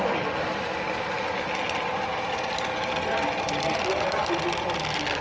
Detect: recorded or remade recorded